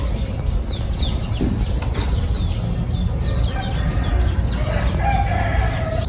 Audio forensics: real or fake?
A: real